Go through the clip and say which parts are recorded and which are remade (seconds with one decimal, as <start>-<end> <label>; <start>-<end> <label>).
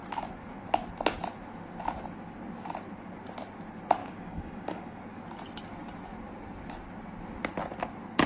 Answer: 0.0-4.0 recorded; 4.0-5.0 remade; 5.0-8.3 recorded